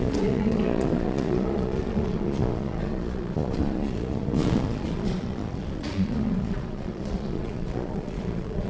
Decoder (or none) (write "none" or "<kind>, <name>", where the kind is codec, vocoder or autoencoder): vocoder, Vocos